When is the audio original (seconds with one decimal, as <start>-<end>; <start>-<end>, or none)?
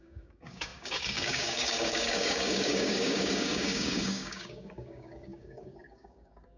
none